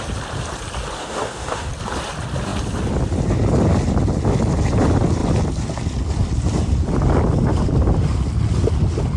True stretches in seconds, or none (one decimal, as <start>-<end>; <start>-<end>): 0.0-1.0; 1.7-9.2